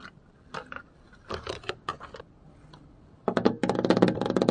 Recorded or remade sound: recorded